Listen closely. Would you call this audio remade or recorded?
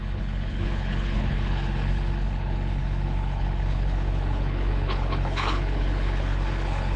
remade